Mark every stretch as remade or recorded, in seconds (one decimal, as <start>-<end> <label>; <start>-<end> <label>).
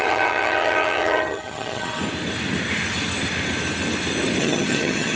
0.0-2.0 remade; 2.0-4.4 recorded; 4.4-5.2 remade